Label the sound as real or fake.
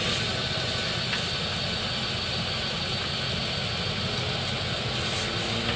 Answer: real